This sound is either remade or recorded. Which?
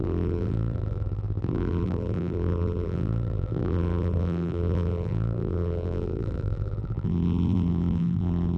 remade